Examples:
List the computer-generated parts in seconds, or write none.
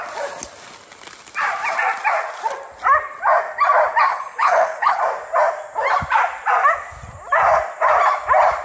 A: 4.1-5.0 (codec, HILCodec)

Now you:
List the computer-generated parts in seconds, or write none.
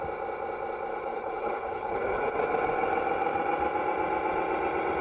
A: 0.9-2.2 (codec, HILCodec)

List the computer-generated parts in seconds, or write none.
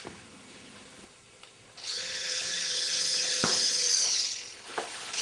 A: 1.8-5.2 (codec, HILCodec)